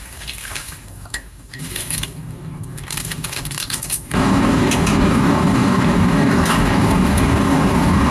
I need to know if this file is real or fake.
fake